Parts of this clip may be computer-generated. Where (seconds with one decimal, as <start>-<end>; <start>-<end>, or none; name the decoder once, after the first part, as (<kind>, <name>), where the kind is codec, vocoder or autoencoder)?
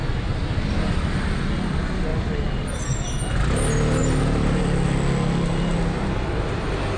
4.0-4.6 (vocoder, BigVGAN v2)